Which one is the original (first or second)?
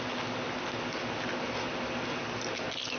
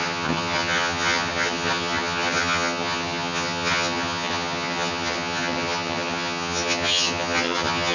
first